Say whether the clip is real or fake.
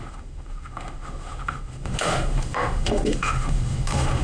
fake